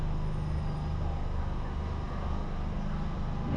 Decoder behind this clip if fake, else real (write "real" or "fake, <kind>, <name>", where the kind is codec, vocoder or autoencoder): real